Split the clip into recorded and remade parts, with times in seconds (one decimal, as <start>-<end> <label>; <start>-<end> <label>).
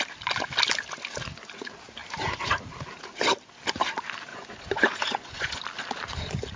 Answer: 0.0-4.3 recorded; 4.3-5.6 remade; 5.6-6.6 recorded